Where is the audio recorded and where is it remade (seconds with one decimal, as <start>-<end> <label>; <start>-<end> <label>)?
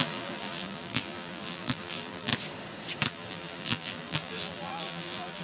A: 0.0-2.3 remade; 2.3-3.1 recorded; 3.1-5.4 remade